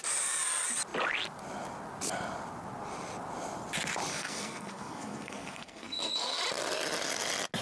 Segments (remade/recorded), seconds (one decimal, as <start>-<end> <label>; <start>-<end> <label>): 0.0-4.1 recorded; 4.1-6.4 remade; 6.4-7.6 recorded